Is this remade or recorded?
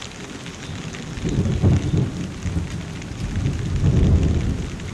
recorded